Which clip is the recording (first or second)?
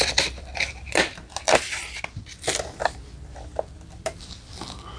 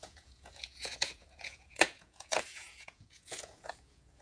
first